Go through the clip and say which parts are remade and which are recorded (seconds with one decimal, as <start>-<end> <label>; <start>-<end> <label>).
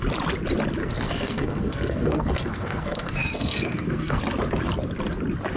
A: 0.0-0.8 recorded; 0.8-4.2 remade; 4.2-5.6 recorded